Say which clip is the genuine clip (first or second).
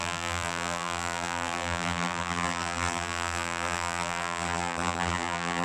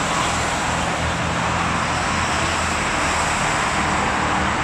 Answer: second